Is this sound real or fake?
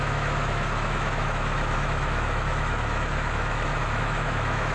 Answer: fake